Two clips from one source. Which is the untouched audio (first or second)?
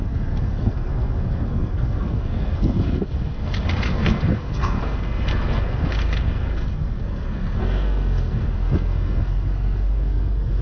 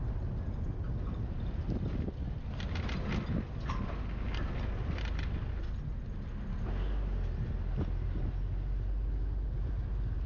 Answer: second